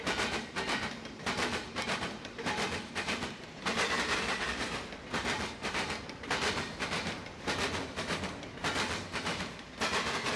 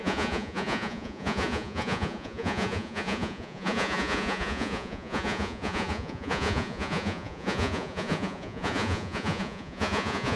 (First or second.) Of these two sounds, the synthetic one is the second